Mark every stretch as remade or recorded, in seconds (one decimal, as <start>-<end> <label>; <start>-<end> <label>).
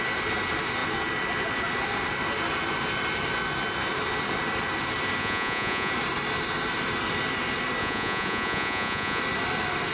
0.0-5.2 recorded; 5.2-5.9 remade; 5.9-7.8 recorded; 7.8-9.2 remade; 9.2-9.9 recorded